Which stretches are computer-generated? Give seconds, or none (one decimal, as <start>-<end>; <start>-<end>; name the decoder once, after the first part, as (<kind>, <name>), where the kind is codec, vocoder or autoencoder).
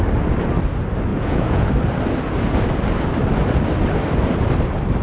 1.1-1.7 (vocoder, Vocos)